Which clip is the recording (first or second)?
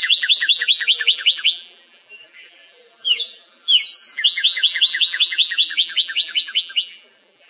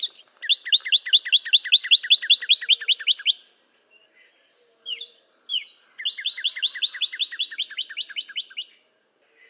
second